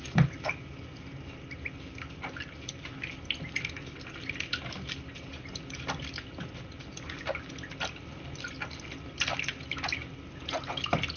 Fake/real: real